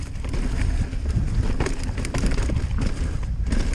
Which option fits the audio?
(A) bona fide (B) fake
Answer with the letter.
A